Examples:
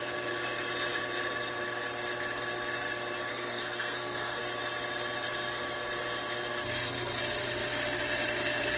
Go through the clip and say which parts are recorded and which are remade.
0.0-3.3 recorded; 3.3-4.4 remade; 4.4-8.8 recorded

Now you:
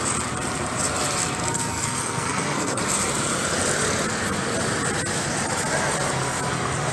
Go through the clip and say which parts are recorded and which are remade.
0.0-1.4 recorded; 1.4-2.8 remade; 2.8-6.9 recorded

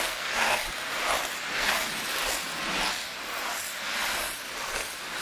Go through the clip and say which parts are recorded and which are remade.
0.0-0.6 remade; 0.6-1.5 recorded; 1.5-1.9 remade; 1.9-5.2 recorded

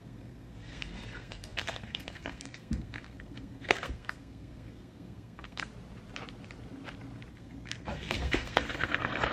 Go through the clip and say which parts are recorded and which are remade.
0.0-5.7 remade; 5.7-7.3 recorded; 7.3-9.3 remade

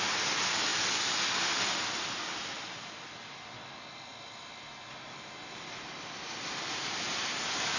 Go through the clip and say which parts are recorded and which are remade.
0.0-7.8 recorded

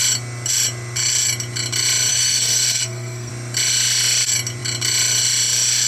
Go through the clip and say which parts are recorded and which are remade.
0.0-2.1 recorded; 2.1-3.3 remade; 3.3-5.9 recorded

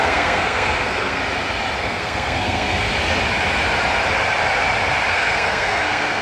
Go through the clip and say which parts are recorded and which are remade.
0.0-1.2 remade; 1.2-1.8 recorded; 1.8-2.9 remade; 2.9-5.1 recorded; 5.1-6.2 remade

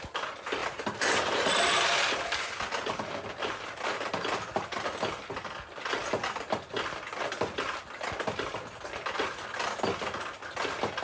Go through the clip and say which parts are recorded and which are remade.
0.0-11.0 recorded